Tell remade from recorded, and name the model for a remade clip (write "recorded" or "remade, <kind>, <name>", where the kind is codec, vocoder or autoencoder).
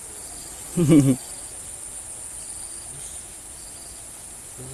recorded